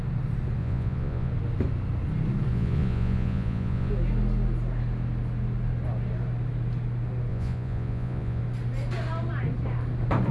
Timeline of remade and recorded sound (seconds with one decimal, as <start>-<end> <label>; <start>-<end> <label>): 0.0-0.6 recorded; 0.6-1.3 remade; 1.3-2.5 recorded; 2.5-3.9 remade; 3.9-7.3 recorded; 7.3-8.4 remade; 8.4-10.3 recorded